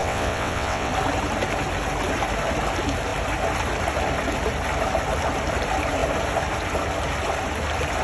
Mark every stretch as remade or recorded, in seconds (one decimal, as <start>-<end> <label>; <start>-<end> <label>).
0.0-0.9 remade; 0.9-8.0 recorded